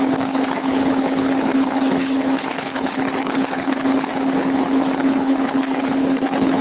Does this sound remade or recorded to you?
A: remade